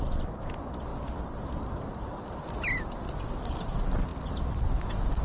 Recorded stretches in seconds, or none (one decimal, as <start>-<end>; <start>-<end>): 0.0-5.2